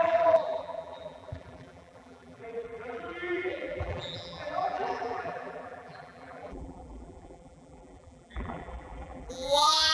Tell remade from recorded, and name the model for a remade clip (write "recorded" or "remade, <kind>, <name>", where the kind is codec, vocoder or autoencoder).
remade, vocoder, BigVGAN v2